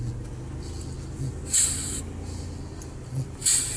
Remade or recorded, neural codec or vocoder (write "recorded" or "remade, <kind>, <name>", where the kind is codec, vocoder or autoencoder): recorded